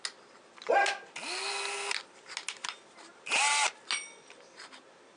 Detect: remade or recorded recorded